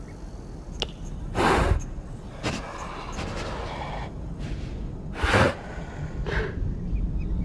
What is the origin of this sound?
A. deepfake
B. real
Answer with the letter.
B